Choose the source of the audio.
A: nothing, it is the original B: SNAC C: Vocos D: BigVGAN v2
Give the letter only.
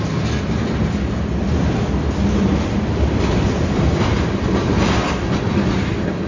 A